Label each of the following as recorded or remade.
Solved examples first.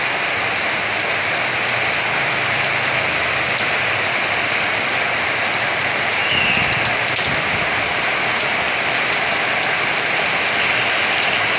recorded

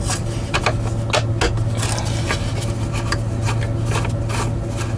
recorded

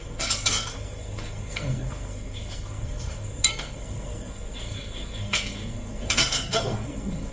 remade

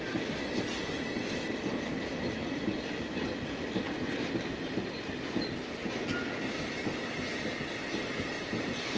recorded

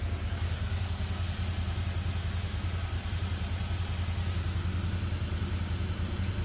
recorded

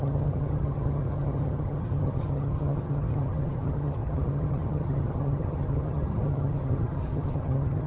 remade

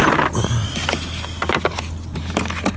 recorded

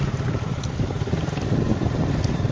remade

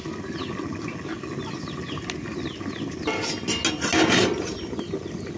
recorded